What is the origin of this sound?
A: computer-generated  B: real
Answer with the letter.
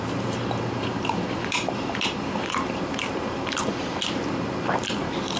A